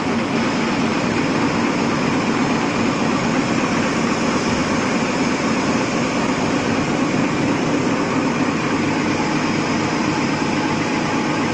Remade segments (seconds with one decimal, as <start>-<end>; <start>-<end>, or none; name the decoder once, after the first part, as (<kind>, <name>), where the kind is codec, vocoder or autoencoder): 0.9-2.0 (vocoder, BigVGAN v2); 4.6-9.1; 10.0-10.5